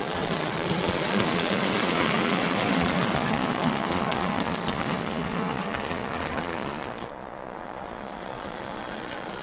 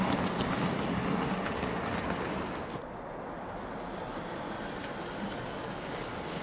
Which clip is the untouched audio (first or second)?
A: second